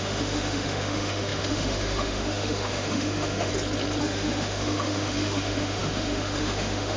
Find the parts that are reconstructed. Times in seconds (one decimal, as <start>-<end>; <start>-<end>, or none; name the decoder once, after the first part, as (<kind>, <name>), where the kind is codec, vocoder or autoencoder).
0.0-3.5 (autoencoder, DAC-VAE); 4.0-7.0